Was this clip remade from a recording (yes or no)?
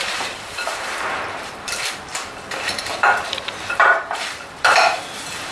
yes